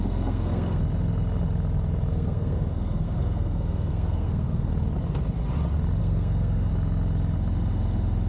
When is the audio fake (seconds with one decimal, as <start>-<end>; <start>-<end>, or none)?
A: 0.0-0.8; 2.1-4.7; 6.0-6.7